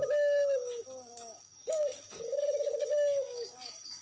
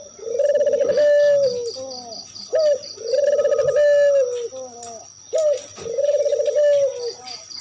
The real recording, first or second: second